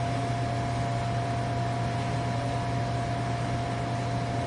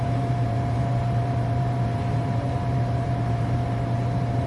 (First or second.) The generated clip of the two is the second